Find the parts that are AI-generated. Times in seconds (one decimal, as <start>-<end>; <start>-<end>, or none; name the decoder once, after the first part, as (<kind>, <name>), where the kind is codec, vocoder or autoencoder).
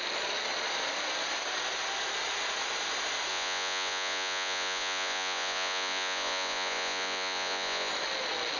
3.3-7.9 (vocoder, Vocos)